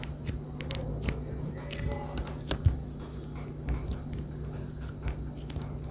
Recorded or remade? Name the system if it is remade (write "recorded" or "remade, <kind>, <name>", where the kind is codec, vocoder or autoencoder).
recorded